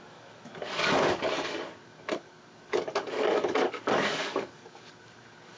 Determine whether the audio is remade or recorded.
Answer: remade